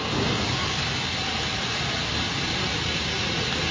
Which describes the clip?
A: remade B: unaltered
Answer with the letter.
B